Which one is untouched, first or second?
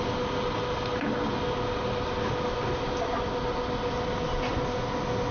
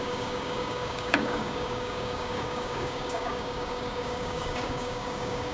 first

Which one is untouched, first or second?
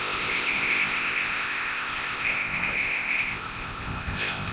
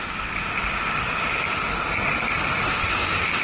second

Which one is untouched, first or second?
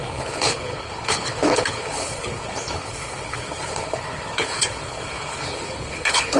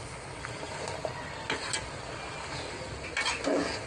second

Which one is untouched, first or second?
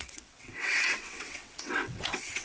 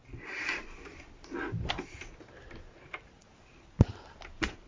second